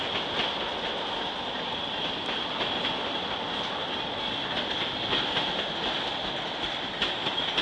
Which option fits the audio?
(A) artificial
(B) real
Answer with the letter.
B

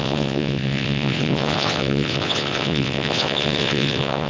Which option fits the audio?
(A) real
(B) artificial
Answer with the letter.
B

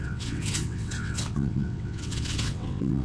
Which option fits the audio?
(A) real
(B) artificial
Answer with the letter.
B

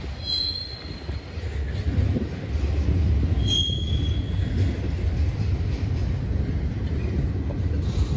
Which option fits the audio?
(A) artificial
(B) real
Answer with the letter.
B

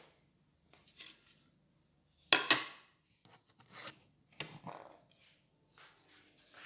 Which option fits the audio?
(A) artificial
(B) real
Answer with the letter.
B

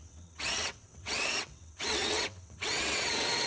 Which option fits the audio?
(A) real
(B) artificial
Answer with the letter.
B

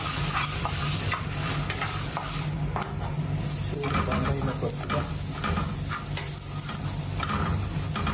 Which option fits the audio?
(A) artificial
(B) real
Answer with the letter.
B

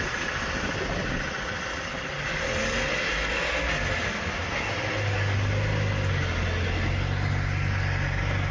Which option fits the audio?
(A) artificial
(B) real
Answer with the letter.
B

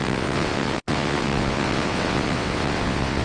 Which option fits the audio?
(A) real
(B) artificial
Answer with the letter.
B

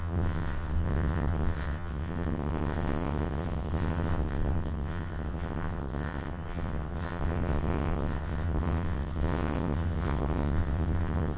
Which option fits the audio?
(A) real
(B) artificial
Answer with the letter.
B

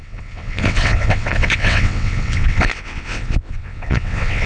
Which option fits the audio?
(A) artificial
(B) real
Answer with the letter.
A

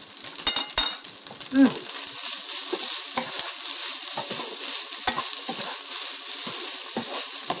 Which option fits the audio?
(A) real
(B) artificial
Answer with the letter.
A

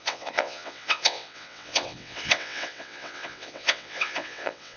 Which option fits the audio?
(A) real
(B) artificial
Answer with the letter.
B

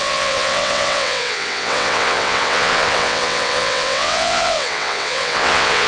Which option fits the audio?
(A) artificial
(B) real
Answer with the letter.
A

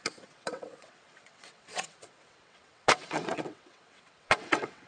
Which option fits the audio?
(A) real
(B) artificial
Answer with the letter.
B